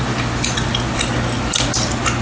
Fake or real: real